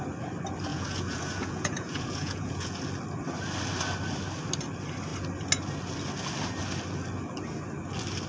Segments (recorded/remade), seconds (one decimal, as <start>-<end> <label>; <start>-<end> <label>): 0.0-0.7 recorded; 0.7-2.8 remade; 2.8-8.3 recorded